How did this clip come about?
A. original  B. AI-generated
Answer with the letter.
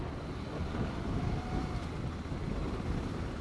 A